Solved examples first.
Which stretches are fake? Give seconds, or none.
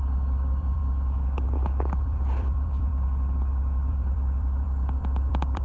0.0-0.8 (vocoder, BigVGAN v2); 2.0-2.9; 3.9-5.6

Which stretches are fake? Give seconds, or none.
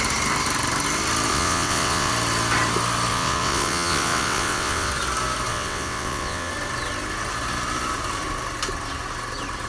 1.3-2.1 (vocoder, WaveNeXt); 3.1-4.9; 5.5-6.5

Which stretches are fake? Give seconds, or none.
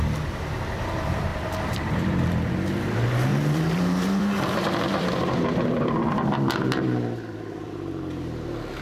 1.3-2.5 (vocoder, BigVGAN v2); 3.3-8.0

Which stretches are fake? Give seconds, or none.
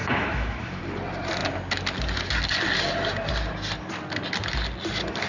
0.0-0.8 (autoencoder, DAC-VAE)